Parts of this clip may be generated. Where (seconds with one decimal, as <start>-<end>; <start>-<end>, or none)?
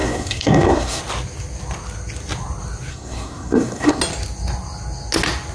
0.0-1.0; 2.9-4.0